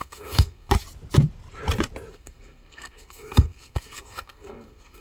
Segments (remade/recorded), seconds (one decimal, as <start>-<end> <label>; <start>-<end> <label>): 0.0-0.7 remade; 0.7-2.1 recorded; 2.1-5.0 remade